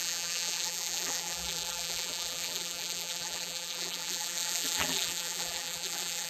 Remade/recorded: remade